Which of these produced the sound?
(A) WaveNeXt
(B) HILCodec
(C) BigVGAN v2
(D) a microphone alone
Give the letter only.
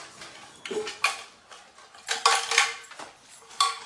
D